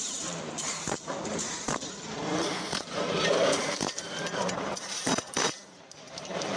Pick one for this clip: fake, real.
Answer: fake